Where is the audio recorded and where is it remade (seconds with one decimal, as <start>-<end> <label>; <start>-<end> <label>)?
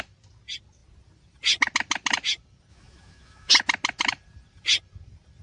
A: 0.0-2.7 recorded; 2.7-3.5 remade; 3.5-5.4 recorded